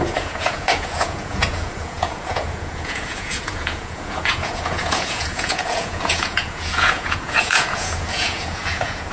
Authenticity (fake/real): fake